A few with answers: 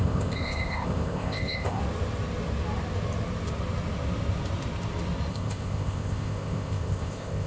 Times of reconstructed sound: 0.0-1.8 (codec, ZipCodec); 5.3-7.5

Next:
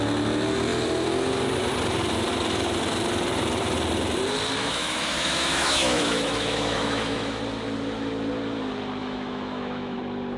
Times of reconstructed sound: 4.6-7.4 (autoencoder, DAC-VAE); 9.0-10.0